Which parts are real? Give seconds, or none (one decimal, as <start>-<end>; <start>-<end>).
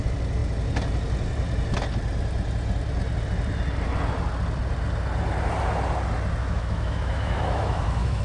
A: 0.0-6.4